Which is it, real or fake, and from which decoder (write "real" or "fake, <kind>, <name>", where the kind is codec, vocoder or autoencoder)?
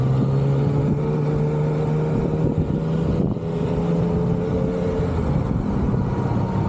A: real